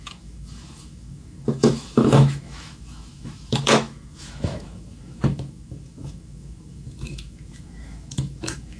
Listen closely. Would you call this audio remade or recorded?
remade